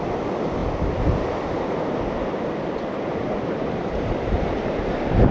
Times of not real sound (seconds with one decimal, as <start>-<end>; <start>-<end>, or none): 3.2-5.3